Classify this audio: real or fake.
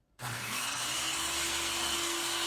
fake